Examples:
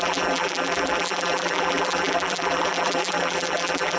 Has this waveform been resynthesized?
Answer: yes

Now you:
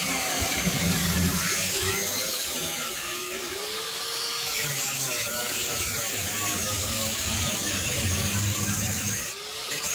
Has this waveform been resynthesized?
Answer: yes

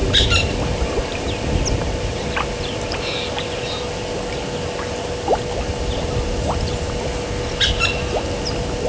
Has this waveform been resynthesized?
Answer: no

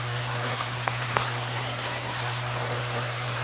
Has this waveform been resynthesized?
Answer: yes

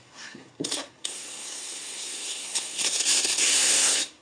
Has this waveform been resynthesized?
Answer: yes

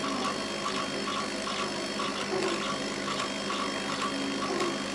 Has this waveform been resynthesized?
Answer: no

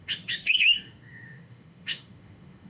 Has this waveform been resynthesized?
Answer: yes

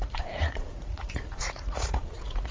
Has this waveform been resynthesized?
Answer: yes